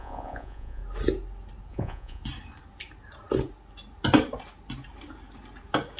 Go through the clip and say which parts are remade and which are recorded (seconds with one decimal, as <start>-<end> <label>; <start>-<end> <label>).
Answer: 0.0-0.8 remade; 0.8-1.7 recorded; 1.7-2.2 remade; 2.2-6.0 recorded